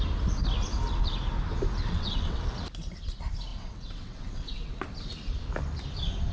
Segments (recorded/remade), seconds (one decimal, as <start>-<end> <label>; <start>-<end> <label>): 0.0-1.8 recorded; 1.8-2.4 remade; 2.4-3.5 recorded; 3.5-4.7 remade; 4.7-6.3 recorded